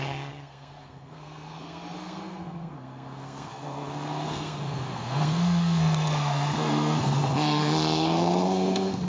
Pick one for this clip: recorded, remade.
remade